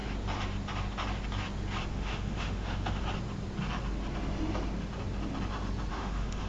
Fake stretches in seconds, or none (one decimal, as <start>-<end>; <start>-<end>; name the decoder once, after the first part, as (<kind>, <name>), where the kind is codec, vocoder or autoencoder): 1.9-3.0 (autoencoder, DAC-VAE); 5.9-6.5